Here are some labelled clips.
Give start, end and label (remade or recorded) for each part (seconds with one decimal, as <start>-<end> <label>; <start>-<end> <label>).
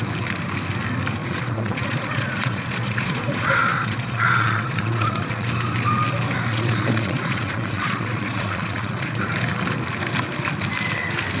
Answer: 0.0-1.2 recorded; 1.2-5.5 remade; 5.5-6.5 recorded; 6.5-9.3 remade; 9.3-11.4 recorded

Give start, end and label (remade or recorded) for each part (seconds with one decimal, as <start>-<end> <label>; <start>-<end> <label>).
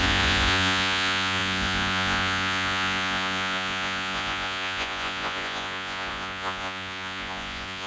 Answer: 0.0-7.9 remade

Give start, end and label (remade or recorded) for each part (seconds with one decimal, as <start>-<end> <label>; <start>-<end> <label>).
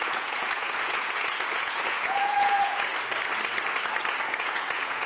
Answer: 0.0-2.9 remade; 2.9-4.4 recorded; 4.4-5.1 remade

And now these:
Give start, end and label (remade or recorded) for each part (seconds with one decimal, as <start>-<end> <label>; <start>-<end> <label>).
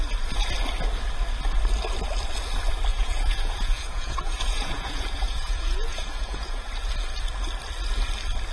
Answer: 0.0-2.9 recorded; 2.9-6.7 remade; 6.7-8.5 recorded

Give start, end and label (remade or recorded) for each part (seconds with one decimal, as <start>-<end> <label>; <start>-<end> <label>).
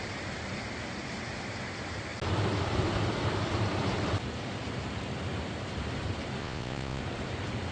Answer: 0.0-6.4 recorded; 6.4-7.0 remade; 7.0-7.7 recorded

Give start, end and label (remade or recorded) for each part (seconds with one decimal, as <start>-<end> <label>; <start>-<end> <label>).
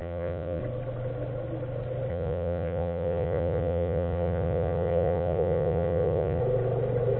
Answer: 0.0-0.6 remade; 0.6-2.1 recorded; 2.1-6.4 remade; 6.4-7.2 recorded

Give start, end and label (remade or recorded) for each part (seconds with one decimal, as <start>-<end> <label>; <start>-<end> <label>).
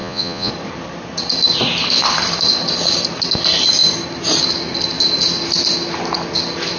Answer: 0.0-0.5 remade; 0.5-6.8 recorded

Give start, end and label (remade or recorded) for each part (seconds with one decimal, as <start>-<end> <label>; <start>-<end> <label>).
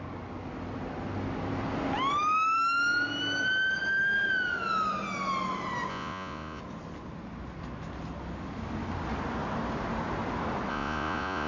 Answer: 0.0-5.9 recorded; 5.9-6.6 remade; 6.6-10.7 recorded; 10.7-11.5 remade